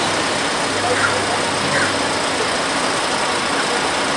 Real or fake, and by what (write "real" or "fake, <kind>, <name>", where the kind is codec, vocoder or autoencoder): real